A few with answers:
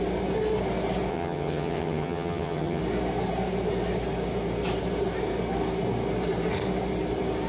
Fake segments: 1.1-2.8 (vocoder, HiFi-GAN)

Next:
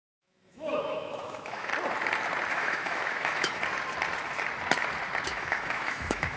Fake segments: 0.0-1.7 (autoencoder, DAC-VAE); 2.5-3.6; 5.3-6.4

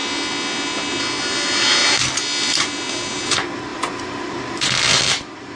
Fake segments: none

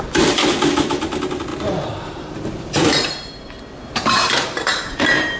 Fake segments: 1.5-2.3 (vocoder, BigVGAN v2); 4.7-5.4

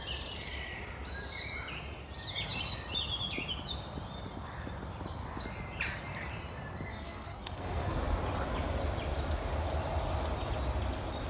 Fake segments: 6.9-8.0 (codec, SNAC)

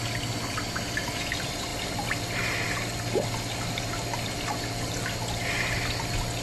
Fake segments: 1.7-5.5 (vocoder, BigVGAN v2)

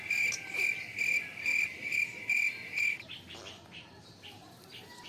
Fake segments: none

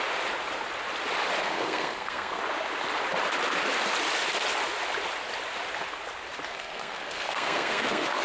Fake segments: 1.4-2.4 (codec, SNAC); 6.5-8.2